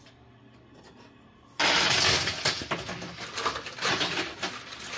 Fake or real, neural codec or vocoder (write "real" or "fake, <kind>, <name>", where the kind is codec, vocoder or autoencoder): real